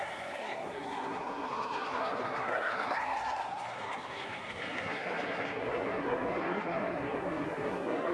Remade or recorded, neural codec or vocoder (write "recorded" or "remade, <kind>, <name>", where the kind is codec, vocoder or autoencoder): remade, codec, SNAC